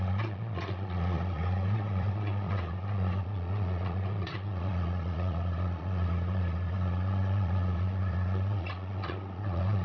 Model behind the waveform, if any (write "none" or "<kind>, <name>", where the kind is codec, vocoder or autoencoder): vocoder, Vocos